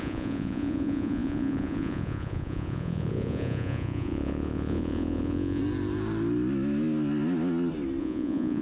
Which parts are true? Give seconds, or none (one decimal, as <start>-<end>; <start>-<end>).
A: 5.6-8.0